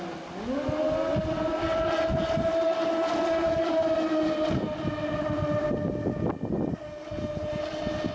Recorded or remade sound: recorded